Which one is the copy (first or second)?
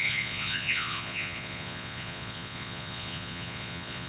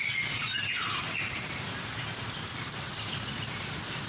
first